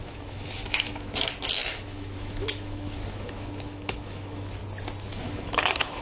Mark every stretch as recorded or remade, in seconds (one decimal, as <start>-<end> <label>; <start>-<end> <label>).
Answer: 0.0-4.6 remade; 4.6-5.2 recorded; 5.2-6.0 remade